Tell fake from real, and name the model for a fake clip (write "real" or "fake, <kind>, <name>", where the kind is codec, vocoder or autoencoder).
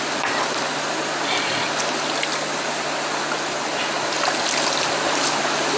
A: real